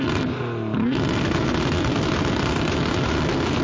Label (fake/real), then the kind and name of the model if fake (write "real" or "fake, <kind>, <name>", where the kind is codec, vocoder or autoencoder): real